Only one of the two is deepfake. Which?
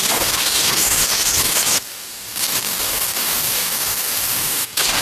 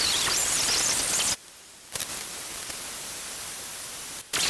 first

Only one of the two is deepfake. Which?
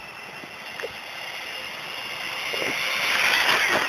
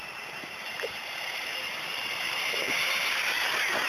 second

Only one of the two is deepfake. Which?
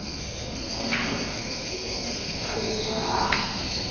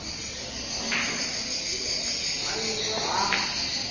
first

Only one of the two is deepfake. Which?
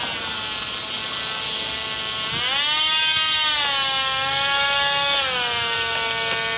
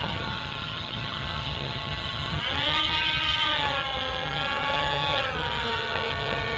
second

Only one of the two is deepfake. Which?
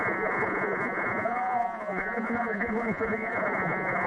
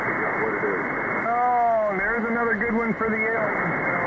first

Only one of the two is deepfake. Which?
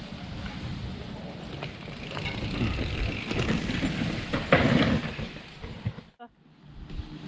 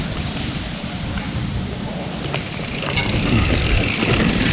second